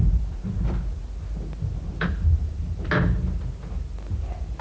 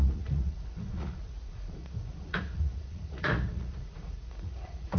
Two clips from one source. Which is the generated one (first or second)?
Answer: second